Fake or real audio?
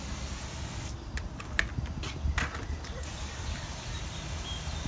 real